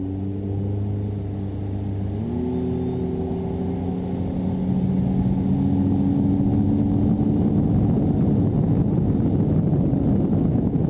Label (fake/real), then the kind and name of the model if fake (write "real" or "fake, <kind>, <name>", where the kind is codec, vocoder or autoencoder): real